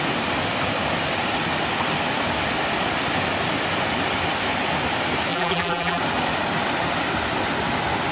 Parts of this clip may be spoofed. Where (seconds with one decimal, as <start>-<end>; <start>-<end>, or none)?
5.3-6.0